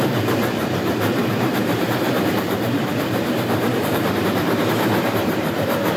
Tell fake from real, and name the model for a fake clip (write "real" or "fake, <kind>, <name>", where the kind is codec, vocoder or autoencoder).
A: fake, vocoder, BigVGAN v2